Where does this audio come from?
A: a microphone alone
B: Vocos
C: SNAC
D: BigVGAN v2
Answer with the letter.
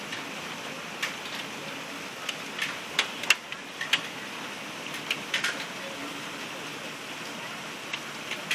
A